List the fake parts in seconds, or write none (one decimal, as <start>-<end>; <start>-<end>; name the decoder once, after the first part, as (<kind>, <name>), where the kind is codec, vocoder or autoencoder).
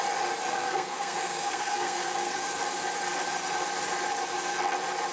0.5-2.5 (codec, SNAC)